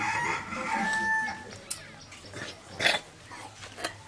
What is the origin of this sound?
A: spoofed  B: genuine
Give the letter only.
B